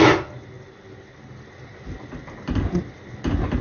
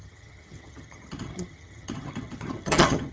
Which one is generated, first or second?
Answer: second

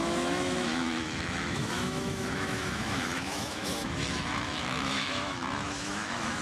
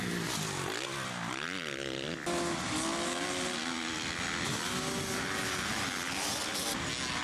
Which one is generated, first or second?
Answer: first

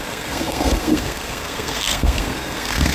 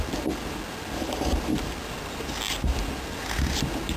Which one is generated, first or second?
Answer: first